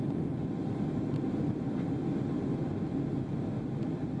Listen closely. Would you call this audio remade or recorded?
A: recorded